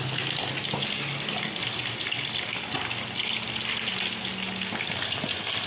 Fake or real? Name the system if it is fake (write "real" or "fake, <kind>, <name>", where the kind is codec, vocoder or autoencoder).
real